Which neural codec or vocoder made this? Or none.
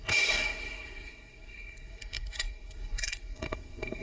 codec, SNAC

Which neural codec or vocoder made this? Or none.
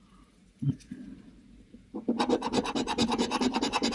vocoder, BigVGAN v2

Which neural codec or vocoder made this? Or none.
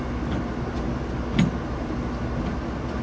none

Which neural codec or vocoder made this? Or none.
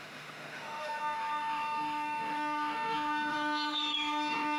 autoencoder, DAC-VAE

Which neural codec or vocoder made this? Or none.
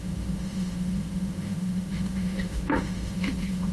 autoencoder, DAC-VAE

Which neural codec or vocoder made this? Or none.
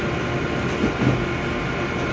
none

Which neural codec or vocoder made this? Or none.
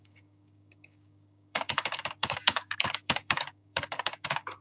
codec, DAC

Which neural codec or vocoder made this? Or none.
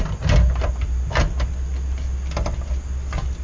none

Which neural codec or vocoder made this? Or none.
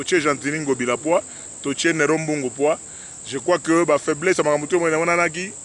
none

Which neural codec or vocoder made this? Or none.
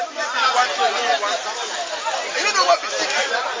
none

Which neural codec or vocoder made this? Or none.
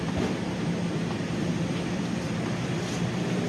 vocoder, BigVGAN v2